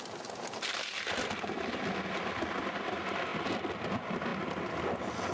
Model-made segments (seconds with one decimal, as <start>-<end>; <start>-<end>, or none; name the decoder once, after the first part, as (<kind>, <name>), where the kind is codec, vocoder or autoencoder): none